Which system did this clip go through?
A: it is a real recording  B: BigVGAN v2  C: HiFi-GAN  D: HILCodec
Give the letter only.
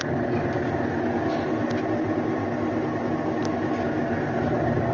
A